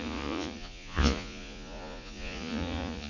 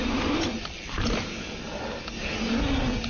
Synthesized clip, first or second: first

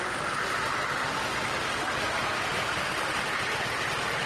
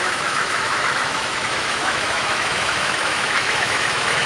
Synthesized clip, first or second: second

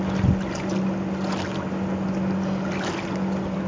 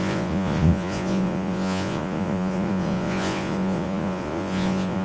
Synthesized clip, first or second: second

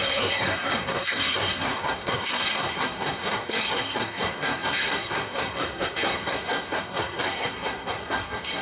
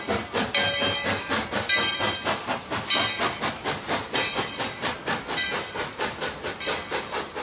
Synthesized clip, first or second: first